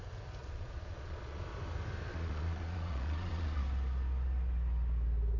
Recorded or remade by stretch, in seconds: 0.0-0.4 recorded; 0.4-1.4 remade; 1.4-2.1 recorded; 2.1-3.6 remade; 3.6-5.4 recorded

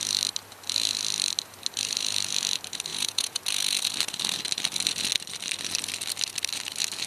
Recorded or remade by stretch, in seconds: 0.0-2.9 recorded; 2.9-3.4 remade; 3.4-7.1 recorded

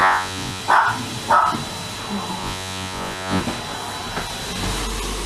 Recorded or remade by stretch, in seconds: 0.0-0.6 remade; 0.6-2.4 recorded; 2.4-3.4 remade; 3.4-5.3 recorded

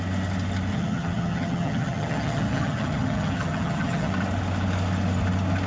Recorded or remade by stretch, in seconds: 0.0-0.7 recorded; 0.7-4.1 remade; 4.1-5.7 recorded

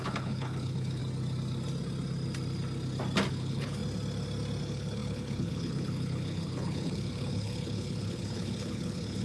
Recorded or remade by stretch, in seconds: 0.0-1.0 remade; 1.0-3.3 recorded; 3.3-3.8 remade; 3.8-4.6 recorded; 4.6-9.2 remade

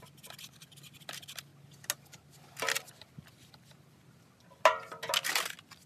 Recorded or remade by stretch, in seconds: 0.0-5.9 recorded

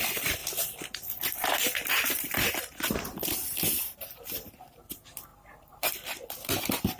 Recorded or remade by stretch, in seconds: 0.0-3.7 recorded; 3.7-4.2 remade; 4.2-5.3 recorded; 5.3-5.9 remade; 5.9-7.0 recorded